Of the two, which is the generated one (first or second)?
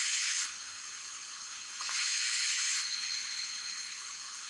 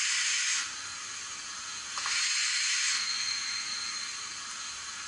first